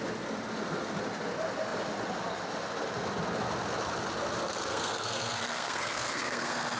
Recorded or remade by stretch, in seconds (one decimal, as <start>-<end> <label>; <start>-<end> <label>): 0.0-4.7 recorded; 4.7-6.8 remade